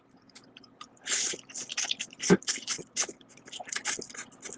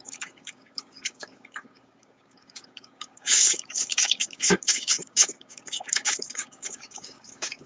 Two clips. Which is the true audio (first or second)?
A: first